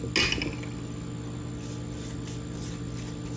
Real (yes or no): yes